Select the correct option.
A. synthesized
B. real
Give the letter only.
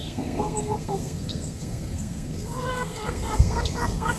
A